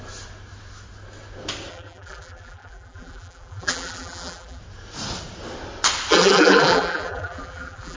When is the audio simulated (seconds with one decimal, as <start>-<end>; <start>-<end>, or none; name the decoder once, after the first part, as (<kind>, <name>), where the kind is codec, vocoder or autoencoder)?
1.7-4.6 (vocoder, BigVGAN v2); 6.1-8.0